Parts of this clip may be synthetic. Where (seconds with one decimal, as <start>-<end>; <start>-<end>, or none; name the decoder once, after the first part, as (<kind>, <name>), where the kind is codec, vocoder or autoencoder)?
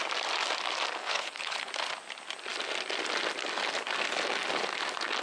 1.0-1.7 (codec, HILCodec)